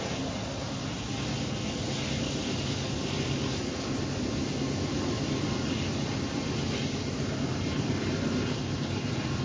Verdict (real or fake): real